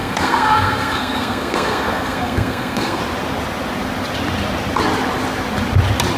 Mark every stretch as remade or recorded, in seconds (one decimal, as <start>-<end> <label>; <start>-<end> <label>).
0.0-3.0 remade; 3.0-6.2 recorded

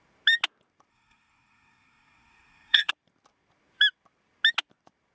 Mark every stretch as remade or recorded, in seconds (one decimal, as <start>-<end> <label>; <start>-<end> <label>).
0.0-0.9 recorded; 0.9-2.9 remade; 2.9-5.1 recorded

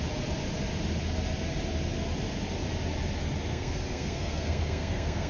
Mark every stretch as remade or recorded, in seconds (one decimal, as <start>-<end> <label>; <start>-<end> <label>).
0.0-3.5 recorded; 3.5-5.3 remade